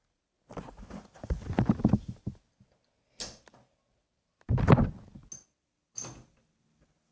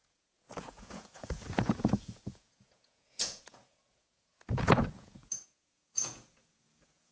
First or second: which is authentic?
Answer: first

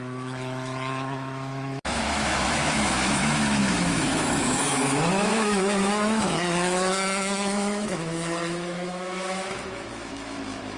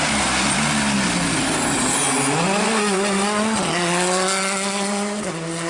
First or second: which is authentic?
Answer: second